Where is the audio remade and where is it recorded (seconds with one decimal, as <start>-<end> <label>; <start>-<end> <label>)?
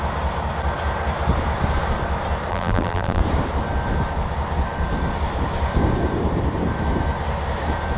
0.0-2.5 recorded; 2.5-3.2 remade; 3.2-8.0 recorded